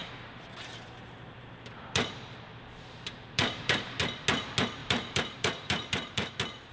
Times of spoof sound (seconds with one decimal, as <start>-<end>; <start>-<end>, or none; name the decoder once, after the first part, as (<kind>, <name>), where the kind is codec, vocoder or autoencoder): 0.0-4.0 (vocoder, BigVGAN v2); 4.8-6.3